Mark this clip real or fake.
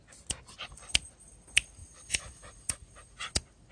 real